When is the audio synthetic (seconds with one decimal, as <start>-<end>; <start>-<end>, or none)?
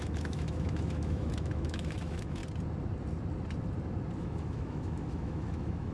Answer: 0.0-2.4; 4.2-5.9